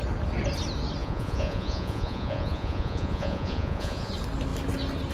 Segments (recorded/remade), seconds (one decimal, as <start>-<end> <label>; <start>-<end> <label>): 0.0-1.0 recorded; 1.0-4.1 remade; 4.1-5.1 recorded